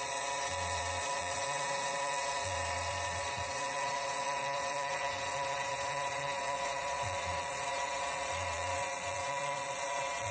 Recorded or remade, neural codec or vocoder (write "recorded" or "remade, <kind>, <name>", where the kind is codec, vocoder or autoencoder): remade, vocoder, Vocos